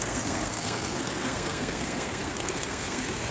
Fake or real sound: fake